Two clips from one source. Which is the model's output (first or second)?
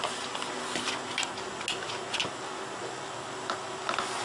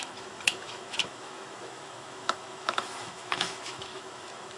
second